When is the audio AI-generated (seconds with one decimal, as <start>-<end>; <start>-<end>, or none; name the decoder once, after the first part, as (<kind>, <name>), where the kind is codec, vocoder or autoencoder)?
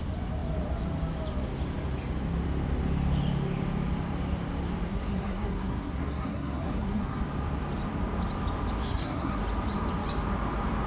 4.9-7.2 (codec, SNAC); 8.8-9.4